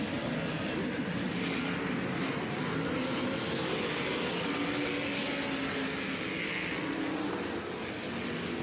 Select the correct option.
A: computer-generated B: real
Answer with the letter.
B